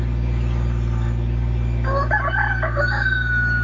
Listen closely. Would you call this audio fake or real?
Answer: real